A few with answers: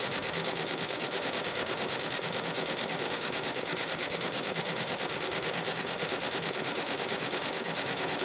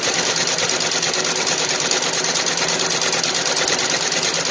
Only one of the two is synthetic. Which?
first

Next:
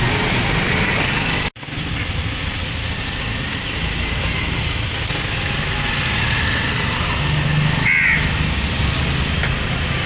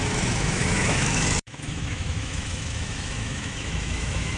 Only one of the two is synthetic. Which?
second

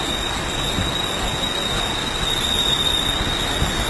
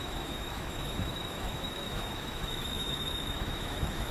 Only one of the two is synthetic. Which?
second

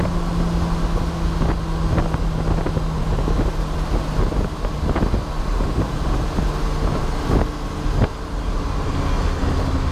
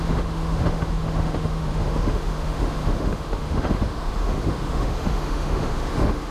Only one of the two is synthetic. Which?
second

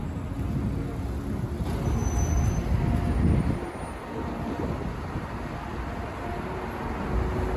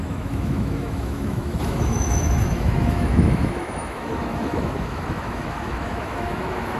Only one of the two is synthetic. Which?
second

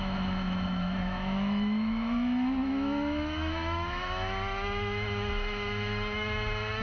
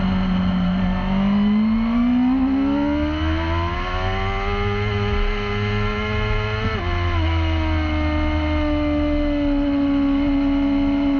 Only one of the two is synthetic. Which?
first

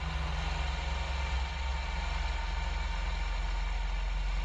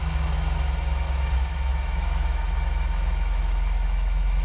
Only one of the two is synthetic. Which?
second